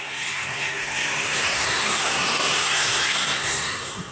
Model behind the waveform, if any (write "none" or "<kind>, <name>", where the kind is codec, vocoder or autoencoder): codec, SNAC